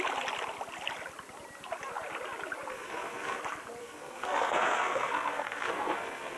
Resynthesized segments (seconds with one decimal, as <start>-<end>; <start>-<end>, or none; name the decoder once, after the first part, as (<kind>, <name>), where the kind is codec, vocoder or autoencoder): 2.7-3.4 (codec, SNAC); 3.8-6.4